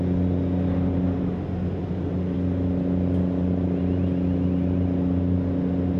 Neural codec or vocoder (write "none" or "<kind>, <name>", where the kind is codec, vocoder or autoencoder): none